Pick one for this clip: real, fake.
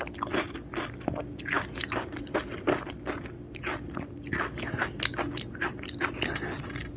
real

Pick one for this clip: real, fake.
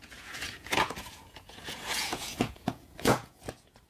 fake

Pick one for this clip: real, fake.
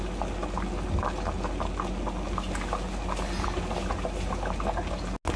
real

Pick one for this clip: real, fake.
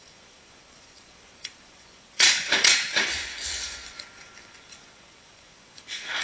fake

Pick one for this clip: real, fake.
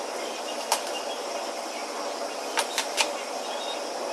real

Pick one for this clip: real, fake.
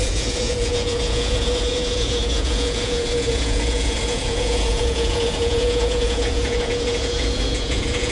fake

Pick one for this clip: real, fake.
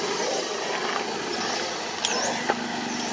real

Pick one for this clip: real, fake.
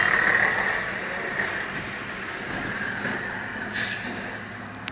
real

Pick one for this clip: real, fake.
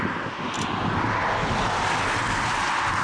real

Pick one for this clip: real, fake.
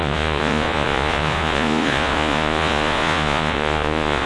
fake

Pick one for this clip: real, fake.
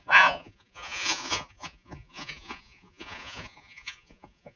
fake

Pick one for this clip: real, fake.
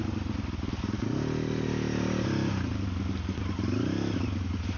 real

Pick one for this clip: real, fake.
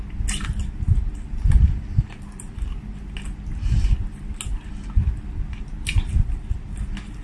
real